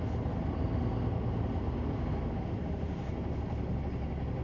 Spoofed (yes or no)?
no